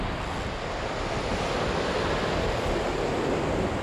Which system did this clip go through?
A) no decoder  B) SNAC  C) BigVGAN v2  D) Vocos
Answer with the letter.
A